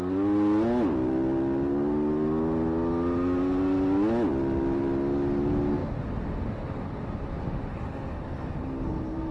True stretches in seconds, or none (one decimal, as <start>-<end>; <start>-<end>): 0.0-9.3